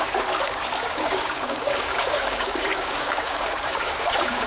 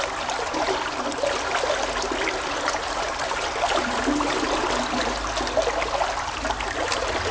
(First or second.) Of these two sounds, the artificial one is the first